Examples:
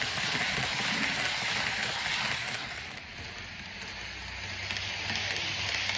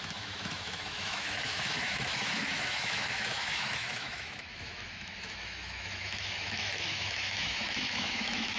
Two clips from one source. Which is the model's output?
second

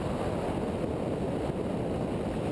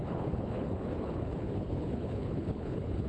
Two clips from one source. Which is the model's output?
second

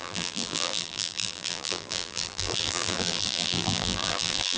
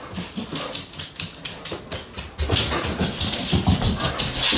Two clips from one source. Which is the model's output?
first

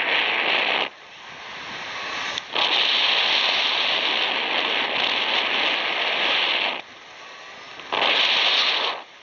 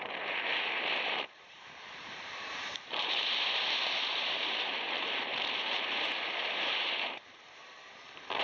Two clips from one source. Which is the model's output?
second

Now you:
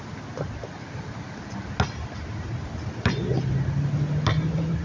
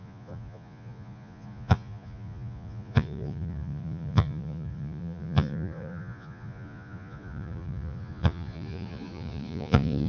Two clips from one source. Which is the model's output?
second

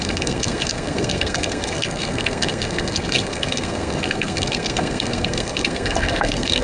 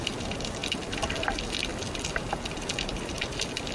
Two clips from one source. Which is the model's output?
first